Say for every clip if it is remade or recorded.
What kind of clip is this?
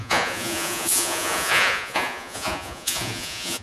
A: remade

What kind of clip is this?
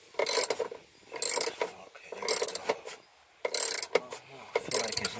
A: recorded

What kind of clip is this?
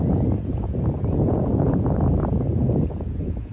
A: remade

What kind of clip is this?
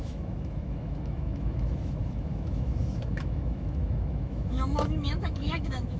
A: remade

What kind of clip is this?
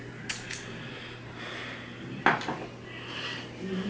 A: recorded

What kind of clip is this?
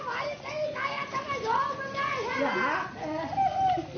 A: recorded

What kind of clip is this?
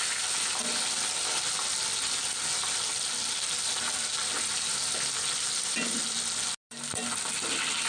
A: recorded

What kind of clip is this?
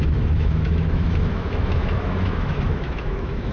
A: remade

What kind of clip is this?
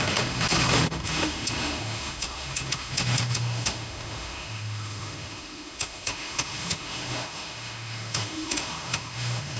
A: remade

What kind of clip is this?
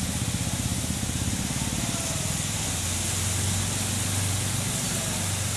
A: recorded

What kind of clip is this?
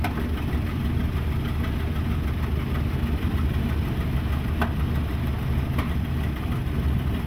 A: recorded